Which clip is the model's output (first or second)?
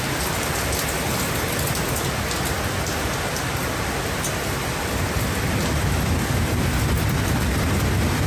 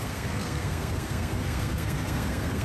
second